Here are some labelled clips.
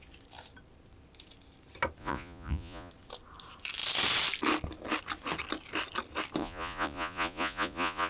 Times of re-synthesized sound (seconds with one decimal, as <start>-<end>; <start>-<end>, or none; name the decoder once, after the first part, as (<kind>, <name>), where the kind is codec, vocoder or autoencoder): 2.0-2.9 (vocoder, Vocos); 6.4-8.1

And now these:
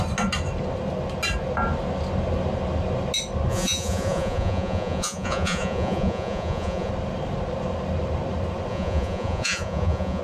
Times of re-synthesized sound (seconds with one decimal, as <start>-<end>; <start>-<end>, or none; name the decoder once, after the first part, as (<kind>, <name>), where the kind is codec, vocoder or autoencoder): 3.5-6.9 (vocoder, Vocos); 8.7-10.2

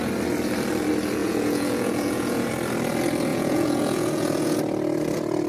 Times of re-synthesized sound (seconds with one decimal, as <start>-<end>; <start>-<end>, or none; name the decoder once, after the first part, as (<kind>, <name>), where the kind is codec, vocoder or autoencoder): 1.2-2.5 (vocoder, Vocos); 3.3-4.6